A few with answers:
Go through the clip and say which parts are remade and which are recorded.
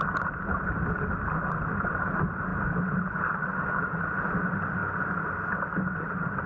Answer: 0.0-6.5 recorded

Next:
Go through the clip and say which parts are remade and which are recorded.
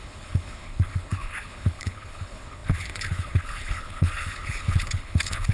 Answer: 0.0-5.5 remade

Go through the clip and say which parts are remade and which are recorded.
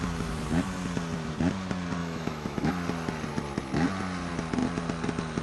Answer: 0.0-2.0 recorded; 2.0-2.7 remade; 2.7-5.4 recorded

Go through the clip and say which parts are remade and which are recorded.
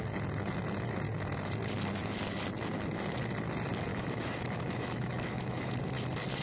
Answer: 0.0-3.9 recorded; 3.9-5.7 remade; 5.7-6.4 recorded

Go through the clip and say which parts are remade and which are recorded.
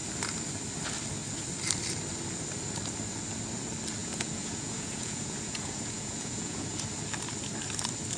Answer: 0.0-4.0 recorded; 4.0-6.8 remade; 6.8-8.2 recorded